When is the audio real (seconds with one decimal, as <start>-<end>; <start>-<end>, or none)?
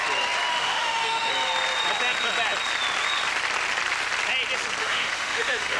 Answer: 0.0-0.5; 1.3-4.8